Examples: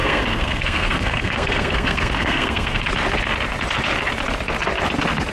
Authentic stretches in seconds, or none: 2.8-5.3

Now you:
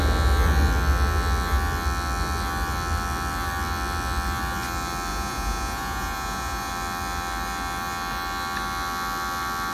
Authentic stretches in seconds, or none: 0.0-5.1; 6.7-9.7

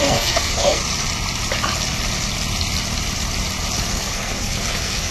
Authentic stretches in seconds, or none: 0.8-3.9

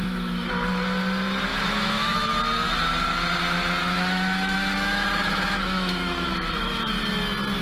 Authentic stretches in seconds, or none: 0.5-1.5; 2.4-3.8; 6.9-7.6

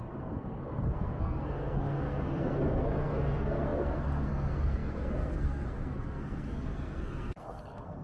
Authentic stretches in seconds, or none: none

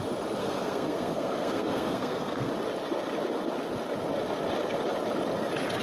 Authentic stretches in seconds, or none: 0.0-0.4; 2.5-5.8

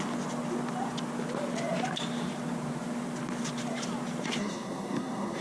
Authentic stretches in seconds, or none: 0.0-4.4